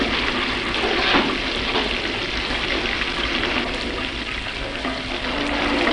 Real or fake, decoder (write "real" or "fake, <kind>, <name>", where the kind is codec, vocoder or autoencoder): real